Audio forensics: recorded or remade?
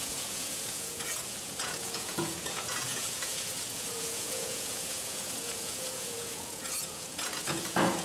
remade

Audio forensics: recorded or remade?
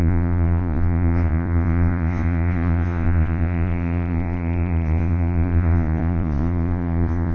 remade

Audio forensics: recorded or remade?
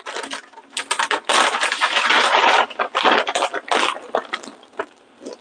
recorded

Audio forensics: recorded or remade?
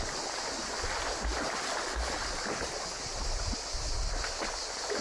recorded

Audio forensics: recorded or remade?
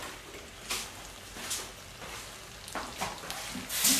recorded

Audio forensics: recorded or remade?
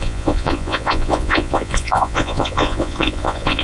remade